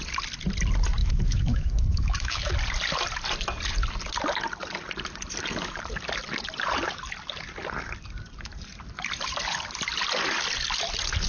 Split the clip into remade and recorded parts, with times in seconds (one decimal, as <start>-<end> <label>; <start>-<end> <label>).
0.0-1.0 recorded; 1.0-2.5 remade; 2.5-11.3 recorded